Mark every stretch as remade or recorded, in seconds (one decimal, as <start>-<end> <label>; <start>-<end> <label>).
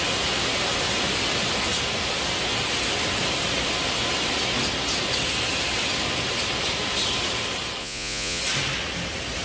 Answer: 0.0-7.8 recorded; 7.8-8.4 remade; 8.4-9.4 recorded